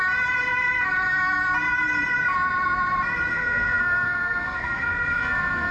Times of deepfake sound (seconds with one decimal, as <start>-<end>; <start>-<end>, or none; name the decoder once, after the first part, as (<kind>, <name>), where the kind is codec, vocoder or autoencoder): 3.3-5.7 (codec, SNAC)